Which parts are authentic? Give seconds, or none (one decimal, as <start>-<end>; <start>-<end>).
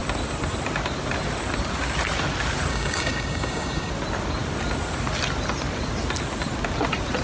0.0-2.7; 3.9-7.2